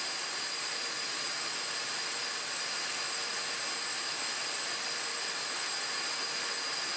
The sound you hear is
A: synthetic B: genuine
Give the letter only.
B